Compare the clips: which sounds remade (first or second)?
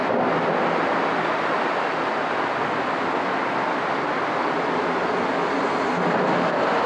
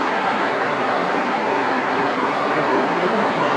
second